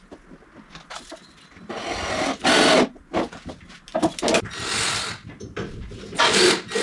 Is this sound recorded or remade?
recorded